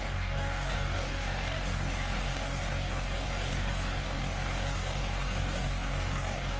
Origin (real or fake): fake